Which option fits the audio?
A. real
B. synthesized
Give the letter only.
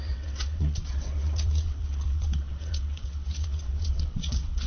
B